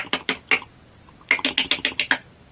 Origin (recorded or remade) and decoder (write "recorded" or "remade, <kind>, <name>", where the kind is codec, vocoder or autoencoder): recorded